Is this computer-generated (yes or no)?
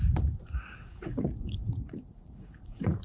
yes